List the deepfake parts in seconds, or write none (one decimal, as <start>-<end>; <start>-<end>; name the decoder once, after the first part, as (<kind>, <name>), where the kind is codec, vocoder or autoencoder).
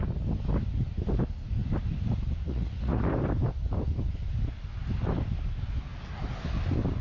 2.4-3.0 (vocoder, Vocos)